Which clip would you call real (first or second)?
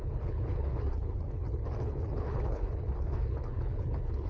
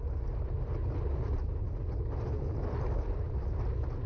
second